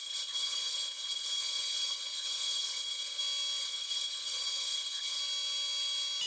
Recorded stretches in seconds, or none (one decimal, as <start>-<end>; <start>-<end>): 3.2-3.6; 5.2-6.3